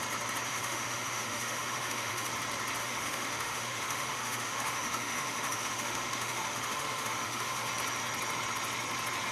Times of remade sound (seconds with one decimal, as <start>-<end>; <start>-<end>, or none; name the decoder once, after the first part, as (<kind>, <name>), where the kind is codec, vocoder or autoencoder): 0.5-2.3 (autoencoder, DAC-VAE); 2.8-7.7